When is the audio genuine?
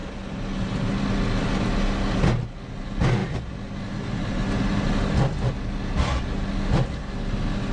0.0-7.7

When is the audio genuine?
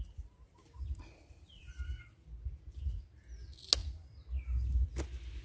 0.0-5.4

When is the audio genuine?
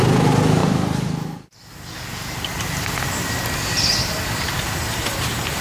0.0-5.6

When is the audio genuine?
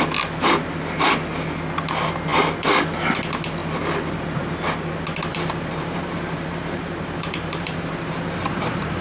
0.0-5.3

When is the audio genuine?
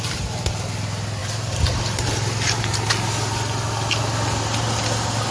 0.0-1.2; 2.9-5.3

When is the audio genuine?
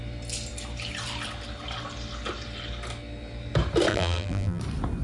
0.0-3.9; 4.6-5.0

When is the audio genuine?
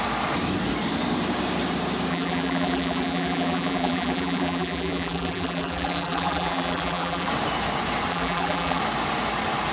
0.0-2.1; 7.3-8.1; 8.8-9.7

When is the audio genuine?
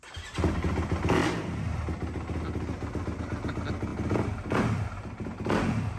0.0-6.0